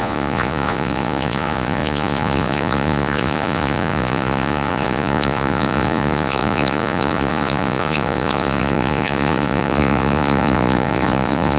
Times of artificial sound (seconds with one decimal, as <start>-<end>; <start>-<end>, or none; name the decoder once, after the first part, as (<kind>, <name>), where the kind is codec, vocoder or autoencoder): 0.0-11.6 (vocoder, Vocos)